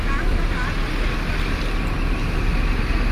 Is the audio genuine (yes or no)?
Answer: yes